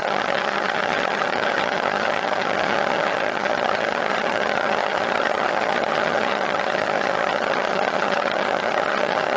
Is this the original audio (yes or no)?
no